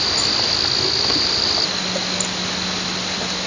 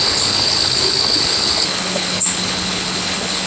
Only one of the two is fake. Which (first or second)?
second